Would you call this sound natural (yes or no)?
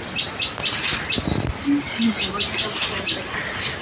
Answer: yes